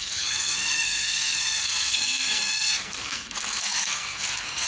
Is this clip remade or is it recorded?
remade